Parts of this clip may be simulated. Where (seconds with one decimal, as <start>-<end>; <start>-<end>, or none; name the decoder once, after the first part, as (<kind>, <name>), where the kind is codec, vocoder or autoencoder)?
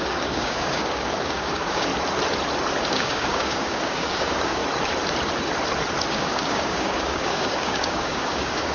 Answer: 0.0-1.9 (codec, DAC); 2.8-4.6; 6.1-8.7